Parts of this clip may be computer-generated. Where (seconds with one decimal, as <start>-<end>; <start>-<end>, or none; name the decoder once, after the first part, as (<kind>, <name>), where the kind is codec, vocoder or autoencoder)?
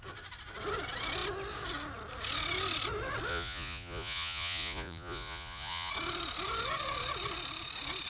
3.3-5.9 (vocoder, Vocos)